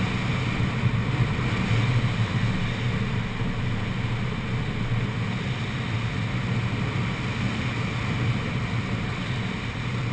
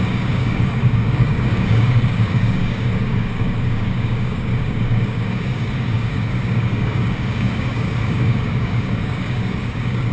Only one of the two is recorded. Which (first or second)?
first